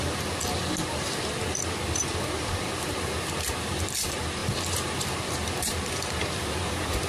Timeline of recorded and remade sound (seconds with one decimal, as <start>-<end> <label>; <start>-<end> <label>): 0.0-7.1 remade